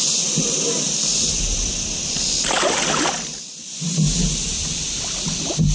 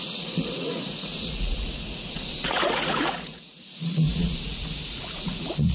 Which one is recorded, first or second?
first